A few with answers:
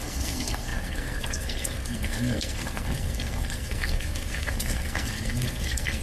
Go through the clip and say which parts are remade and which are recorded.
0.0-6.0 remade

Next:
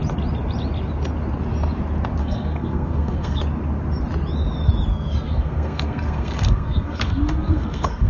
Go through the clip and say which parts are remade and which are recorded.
0.0-2.2 recorded; 2.2-3.4 remade; 3.4-4.9 recorded; 4.9-8.1 remade

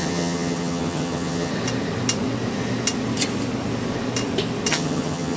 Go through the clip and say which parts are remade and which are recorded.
0.0-1.5 remade; 1.5-4.7 recorded; 4.7-5.4 remade

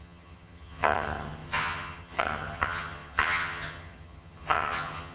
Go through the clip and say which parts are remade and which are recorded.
0.0-5.1 remade

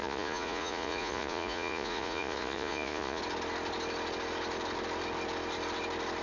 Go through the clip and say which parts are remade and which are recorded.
0.0-3.2 remade; 3.2-6.2 recorded

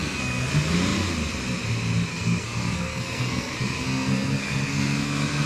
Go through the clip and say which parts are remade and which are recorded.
0.0-0.5 remade; 0.5-2.1 recorded; 2.1-5.5 remade